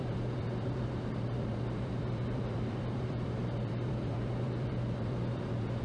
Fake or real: fake